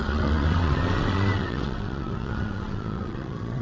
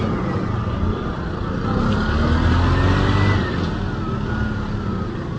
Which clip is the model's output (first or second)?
first